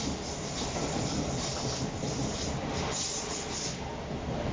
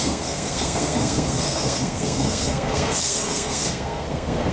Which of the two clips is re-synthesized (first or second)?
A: second